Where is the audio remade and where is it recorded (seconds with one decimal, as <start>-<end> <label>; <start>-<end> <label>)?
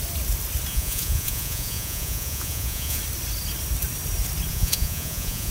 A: 0.0-0.7 recorded; 0.7-3.0 remade; 3.0-4.5 recorded; 4.5-5.5 remade